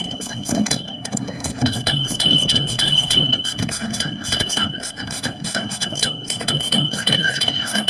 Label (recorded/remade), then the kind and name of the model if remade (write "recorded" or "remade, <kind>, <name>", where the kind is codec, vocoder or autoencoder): remade, codec, SNAC